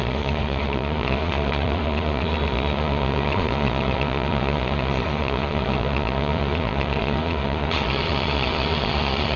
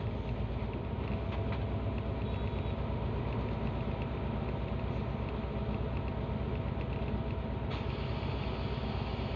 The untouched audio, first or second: second